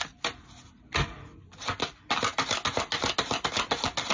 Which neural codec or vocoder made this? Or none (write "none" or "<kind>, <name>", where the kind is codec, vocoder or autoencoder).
none